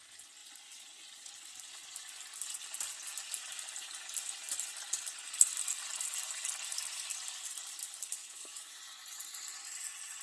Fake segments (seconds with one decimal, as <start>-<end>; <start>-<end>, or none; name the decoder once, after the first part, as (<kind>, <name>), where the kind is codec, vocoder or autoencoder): 8.2-8.8 (autoencoder, DAC-VAE)

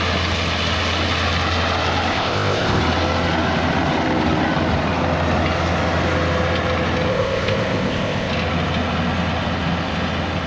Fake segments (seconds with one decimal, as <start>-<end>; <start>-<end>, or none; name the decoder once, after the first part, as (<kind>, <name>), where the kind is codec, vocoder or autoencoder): 2.1-2.8 (codec, ZipCodec); 7.1-8.3